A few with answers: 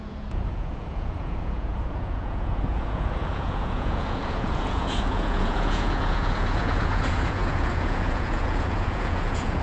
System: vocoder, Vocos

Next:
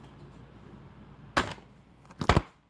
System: none